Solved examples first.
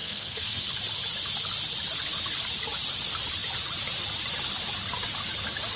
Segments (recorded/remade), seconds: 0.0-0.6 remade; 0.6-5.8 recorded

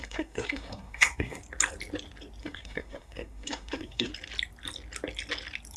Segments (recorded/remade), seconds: 0.0-1.4 remade; 1.4-2.4 recorded; 2.4-4.1 remade; 4.1-5.8 recorded

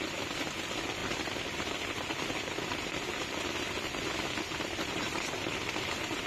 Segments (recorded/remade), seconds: 0.0-6.3 recorded